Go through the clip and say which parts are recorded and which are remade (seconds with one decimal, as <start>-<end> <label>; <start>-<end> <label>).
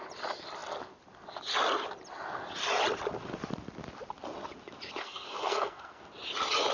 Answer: 0.0-5.0 recorded; 5.0-6.0 remade; 6.0-6.7 recorded